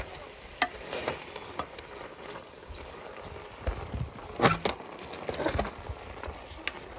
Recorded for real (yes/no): yes